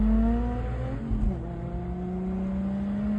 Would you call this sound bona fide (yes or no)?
yes